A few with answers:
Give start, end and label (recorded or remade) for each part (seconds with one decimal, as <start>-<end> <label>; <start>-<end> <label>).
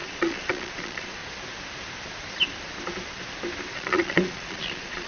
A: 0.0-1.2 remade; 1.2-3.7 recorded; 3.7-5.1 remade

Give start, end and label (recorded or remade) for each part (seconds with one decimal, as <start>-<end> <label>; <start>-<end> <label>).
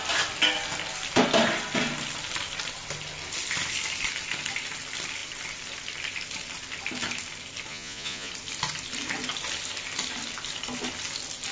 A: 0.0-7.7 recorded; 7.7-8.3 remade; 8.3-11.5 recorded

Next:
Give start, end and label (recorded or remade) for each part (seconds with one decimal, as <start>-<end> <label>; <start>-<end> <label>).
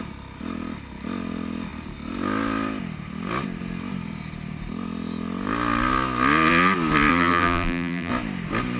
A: 0.0-7.1 recorded; 7.1-8.1 remade; 8.1-8.8 recorded